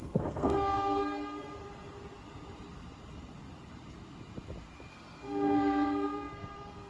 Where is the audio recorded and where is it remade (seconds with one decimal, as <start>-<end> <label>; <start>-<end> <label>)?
0.0-1.6 remade; 1.6-4.9 recorded; 4.9-6.9 remade